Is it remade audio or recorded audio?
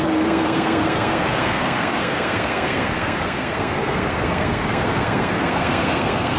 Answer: remade